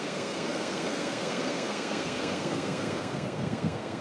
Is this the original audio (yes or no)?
no